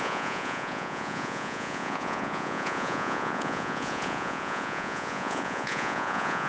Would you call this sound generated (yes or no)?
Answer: yes